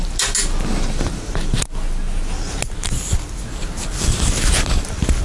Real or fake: real